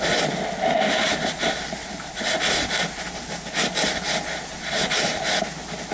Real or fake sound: real